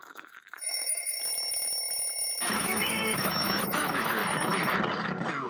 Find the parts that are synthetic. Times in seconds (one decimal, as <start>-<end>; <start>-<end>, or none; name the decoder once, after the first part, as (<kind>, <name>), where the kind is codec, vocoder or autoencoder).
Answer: 0.0-1.2 (autoencoder, DAC-VAE); 2.5-4.2